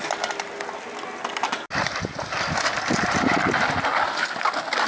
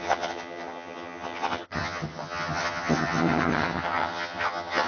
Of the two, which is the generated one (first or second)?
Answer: second